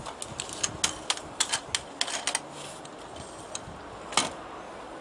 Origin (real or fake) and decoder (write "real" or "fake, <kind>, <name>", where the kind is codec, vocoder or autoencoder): real